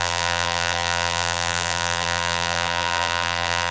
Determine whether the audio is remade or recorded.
remade